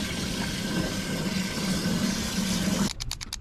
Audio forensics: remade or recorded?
recorded